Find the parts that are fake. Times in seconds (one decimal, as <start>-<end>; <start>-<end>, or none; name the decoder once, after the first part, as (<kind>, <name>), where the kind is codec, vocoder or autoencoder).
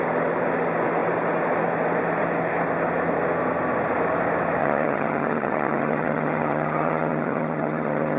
4.6-8.2 (vocoder, HiFi-GAN)